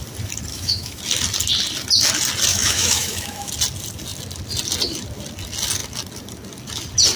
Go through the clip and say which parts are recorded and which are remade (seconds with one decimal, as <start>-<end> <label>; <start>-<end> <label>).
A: 0.0-0.5 recorded; 0.5-1.0 remade; 1.0-2.5 recorded; 2.5-3.5 remade; 3.5-7.2 recorded